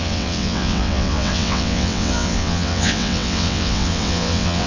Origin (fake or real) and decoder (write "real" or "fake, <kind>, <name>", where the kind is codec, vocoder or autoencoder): fake, vocoder, WaveNeXt